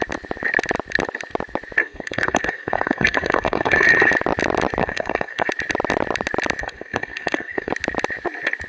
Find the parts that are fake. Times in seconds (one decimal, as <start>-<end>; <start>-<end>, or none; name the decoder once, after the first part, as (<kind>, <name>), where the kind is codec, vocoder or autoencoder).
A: 1.8-4.1 (codec, SNAC); 4.8-5.5; 6.6-7.7